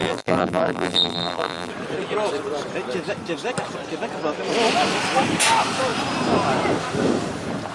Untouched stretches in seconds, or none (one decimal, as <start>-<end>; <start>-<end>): 1.7-7.7

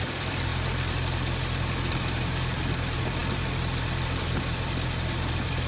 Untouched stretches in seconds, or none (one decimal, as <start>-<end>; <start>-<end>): 0.5-2.0